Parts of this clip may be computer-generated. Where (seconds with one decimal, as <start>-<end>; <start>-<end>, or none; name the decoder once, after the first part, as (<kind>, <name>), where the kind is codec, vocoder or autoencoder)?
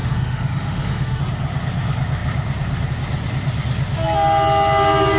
0.0-1.2 (autoencoder, DAC-VAE)